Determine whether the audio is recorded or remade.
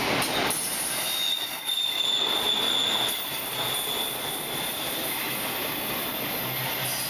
recorded